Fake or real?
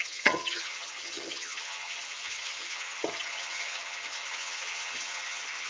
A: fake